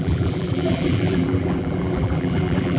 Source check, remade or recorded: remade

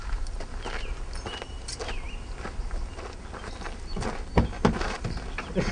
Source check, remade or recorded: recorded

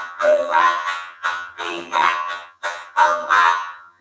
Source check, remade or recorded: remade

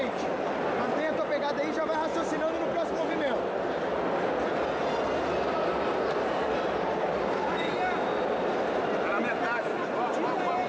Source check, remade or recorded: recorded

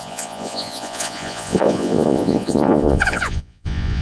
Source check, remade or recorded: remade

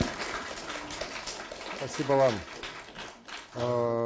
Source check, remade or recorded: recorded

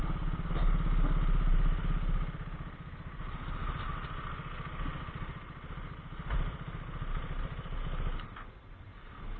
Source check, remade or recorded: recorded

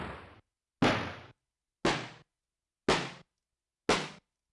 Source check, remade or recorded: recorded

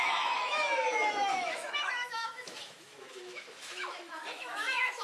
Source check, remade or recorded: remade